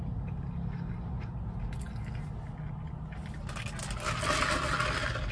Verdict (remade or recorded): recorded